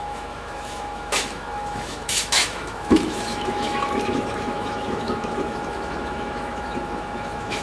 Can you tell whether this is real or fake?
fake